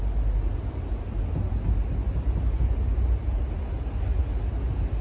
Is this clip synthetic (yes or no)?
no